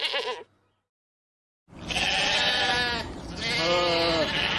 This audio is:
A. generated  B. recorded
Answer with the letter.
B